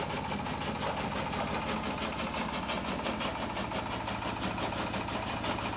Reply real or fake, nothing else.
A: real